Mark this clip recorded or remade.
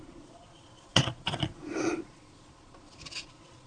remade